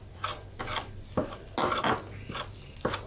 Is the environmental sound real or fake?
real